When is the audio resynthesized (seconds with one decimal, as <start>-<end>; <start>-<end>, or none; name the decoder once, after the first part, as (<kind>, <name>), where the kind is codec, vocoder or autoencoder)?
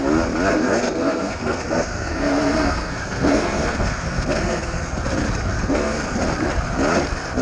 0.5-4.9 (codec, SNAC); 5.5-6.2